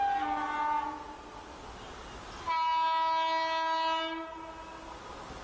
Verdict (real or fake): real